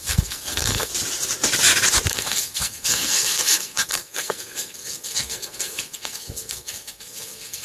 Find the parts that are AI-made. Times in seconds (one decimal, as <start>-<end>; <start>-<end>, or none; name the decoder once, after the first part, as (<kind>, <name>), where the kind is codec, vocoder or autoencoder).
0.0-0.9 (codec, SNAC); 2.1-7.6